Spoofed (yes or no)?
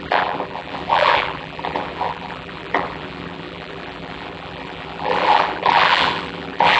yes